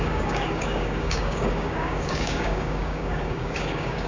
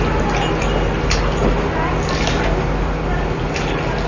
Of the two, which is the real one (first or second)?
second